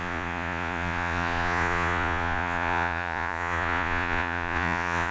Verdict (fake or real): fake